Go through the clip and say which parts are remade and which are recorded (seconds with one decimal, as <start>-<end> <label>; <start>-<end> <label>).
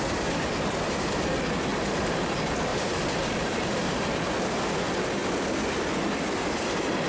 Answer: 0.0-1.7 recorded; 1.7-2.3 remade; 2.3-2.7 recorded; 2.7-4.3 remade; 4.3-7.1 recorded